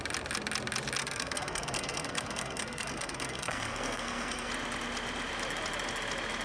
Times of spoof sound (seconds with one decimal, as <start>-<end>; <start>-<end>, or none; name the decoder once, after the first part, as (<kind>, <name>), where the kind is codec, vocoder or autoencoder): 1.0-4.5 (codec, SNAC)